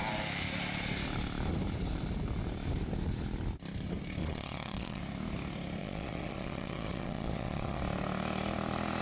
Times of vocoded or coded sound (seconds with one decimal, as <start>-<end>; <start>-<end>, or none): 4.2-5.0; 5.8-7.8